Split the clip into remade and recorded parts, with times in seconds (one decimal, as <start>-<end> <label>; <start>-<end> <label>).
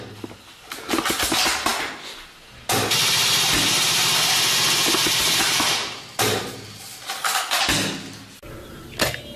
0.0-9.4 recorded